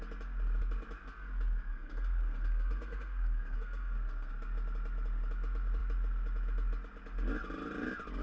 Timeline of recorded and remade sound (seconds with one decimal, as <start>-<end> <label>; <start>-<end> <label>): 0.0-1.7 recorded; 1.7-4.3 remade; 4.3-8.2 recorded